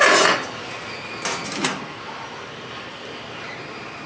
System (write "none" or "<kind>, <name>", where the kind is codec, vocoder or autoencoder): none